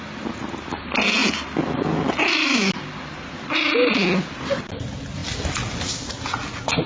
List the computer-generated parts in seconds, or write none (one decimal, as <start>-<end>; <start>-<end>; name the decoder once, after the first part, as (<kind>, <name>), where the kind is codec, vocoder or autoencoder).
none